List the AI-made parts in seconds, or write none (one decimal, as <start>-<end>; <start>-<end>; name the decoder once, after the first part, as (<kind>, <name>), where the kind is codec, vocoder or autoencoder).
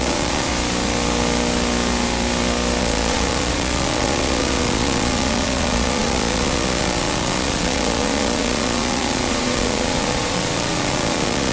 0.0-0.5 (vocoder, Vocos); 2.8-11.5